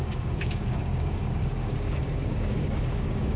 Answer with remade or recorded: remade